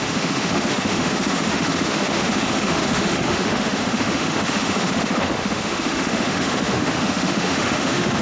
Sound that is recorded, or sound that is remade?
remade